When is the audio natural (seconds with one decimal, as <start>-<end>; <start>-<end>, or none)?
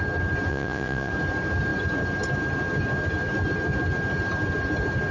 0.0-0.5; 1.1-5.1